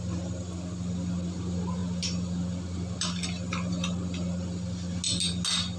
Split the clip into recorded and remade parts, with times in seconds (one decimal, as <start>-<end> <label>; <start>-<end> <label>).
0.0-5.8 recorded